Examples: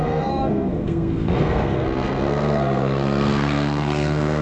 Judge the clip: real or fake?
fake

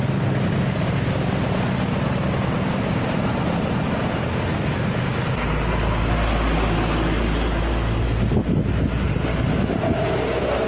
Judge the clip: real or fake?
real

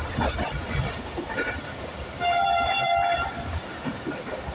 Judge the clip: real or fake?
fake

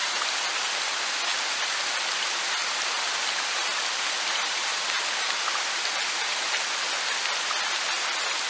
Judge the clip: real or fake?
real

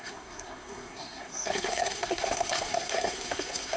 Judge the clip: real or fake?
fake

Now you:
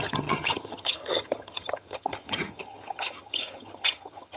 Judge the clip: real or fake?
fake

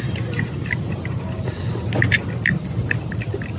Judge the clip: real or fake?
real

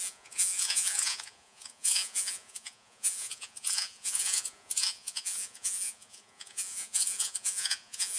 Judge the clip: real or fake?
fake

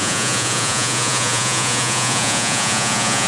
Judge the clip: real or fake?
fake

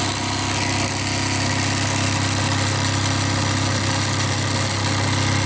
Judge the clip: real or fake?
real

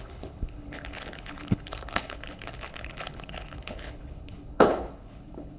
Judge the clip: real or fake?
fake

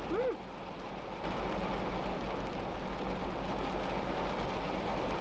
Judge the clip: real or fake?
real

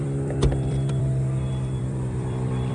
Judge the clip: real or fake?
fake